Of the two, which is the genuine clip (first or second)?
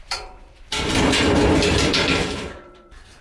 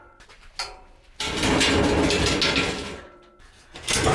second